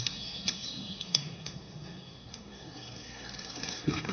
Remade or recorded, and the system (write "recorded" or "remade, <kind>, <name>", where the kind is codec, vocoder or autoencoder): remade, codec, SNAC